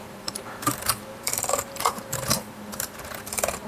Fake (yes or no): yes